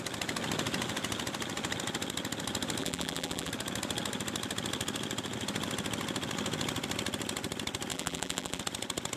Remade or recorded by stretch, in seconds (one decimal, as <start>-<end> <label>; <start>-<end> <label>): 0.0-2.8 recorded; 2.8-3.5 remade; 3.5-7.9 recorded; 7.9-8.6 remade; 8.6-9.2 recorded